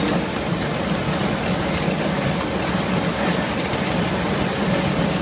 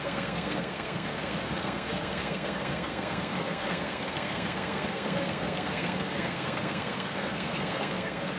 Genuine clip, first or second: first